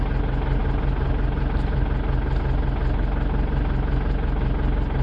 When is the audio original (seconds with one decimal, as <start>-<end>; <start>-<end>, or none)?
0.0-5.0